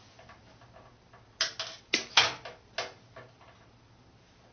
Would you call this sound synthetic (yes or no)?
no